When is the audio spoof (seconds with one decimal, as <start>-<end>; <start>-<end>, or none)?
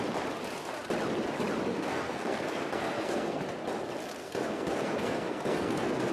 1.7-3.4; 4.2-6.1